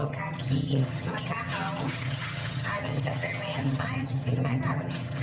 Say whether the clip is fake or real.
fake